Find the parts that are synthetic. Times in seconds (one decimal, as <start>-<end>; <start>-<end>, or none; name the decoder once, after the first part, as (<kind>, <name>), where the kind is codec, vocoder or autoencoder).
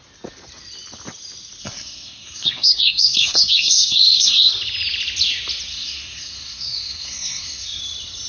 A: 1.6-4.5 (codec, SNAC); 5.7-7.8